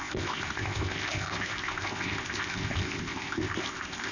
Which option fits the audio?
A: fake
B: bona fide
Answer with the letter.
A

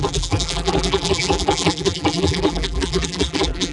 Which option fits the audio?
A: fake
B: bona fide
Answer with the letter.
A